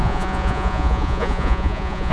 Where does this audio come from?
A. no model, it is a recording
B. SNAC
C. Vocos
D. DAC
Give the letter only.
C